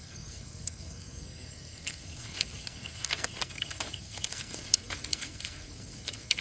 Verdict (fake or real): fake